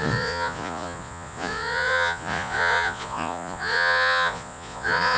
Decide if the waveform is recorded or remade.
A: remade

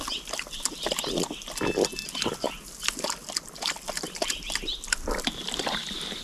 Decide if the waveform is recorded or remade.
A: recorded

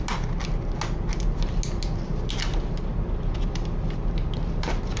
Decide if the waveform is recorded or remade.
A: recorded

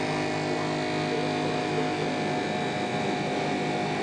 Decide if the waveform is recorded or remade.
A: recorded